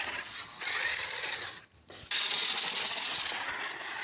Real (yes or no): yes